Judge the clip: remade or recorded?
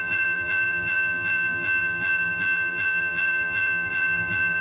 remade